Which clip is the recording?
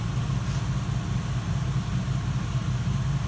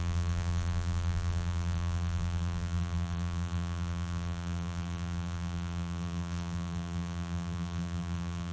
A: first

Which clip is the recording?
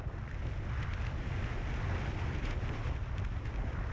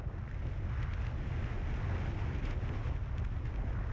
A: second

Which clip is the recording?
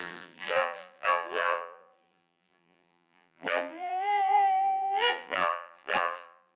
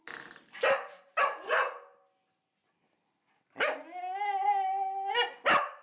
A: second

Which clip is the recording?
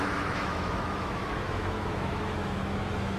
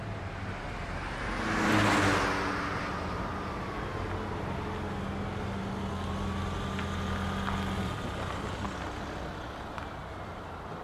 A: second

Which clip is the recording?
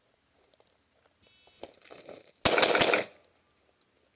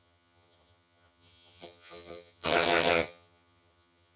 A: first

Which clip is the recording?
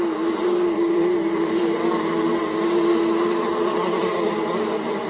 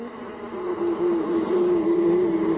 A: first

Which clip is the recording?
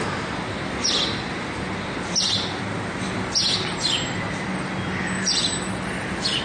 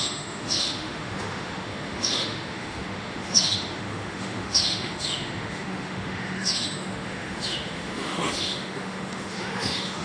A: first